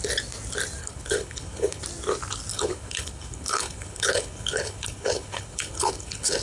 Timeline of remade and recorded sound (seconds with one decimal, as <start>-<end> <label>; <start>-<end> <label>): 0.0-0.8 recorded; 0.8-1.8 remade; 1.8-2.5 recorded; 2.5-6.4 remade